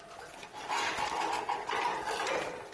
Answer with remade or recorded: recorded